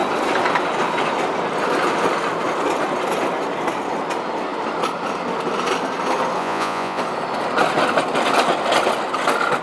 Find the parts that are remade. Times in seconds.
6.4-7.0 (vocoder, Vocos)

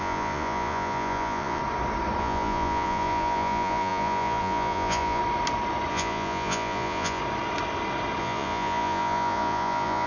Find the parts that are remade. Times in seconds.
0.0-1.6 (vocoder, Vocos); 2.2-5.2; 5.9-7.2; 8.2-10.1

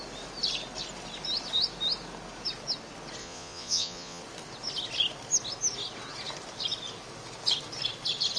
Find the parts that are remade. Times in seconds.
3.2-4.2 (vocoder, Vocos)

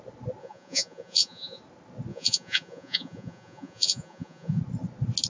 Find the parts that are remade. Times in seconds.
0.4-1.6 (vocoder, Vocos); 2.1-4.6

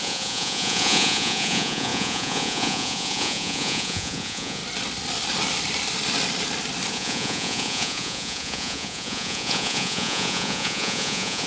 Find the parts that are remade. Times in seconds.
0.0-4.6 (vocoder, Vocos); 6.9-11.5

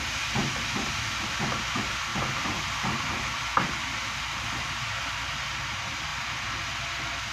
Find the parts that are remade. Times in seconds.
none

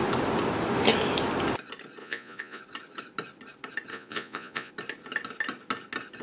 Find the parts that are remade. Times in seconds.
2.0-2.6 (vocoder, Vocos); 3.9-4.7

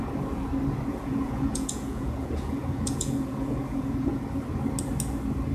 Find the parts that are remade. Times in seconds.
0.9-4.2 (vocoder, Vocos)